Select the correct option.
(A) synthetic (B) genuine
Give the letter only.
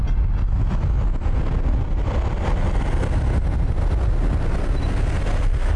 B